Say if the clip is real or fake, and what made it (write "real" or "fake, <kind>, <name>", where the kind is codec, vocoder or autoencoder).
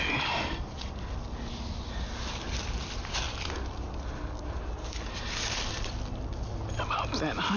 real